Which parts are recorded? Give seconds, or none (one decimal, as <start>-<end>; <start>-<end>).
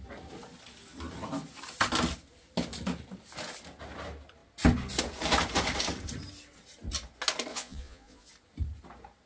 0.0-7.5; 8.3-9.3